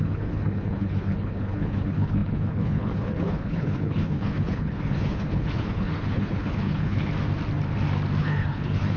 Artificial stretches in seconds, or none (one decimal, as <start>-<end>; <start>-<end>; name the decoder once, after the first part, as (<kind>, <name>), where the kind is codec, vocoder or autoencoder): 0.0-7.1 (codec, HILCodec); 8.2-9.0